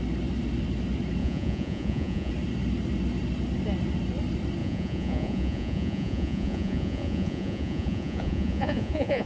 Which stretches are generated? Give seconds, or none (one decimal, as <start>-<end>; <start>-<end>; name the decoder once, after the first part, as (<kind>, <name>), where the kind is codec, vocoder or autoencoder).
1.2-2.3 (vocoder, Vocos); 4.6-9.3